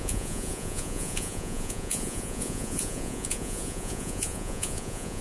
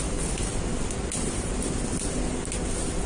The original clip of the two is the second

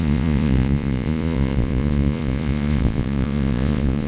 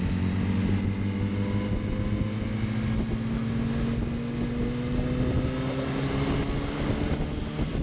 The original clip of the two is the second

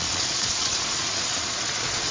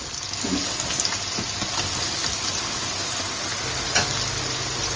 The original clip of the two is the second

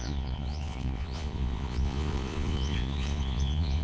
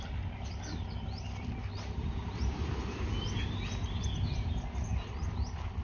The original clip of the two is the second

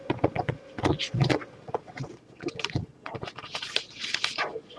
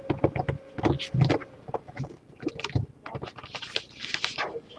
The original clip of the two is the second